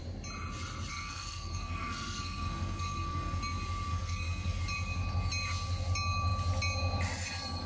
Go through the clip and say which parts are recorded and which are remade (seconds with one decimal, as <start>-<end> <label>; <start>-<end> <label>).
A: 0.0-0.9 recorded; 0.9-3.4 remade; 3.4-3.9 recorded; 3.9-4.6 remade; 4.6-7.7 recorded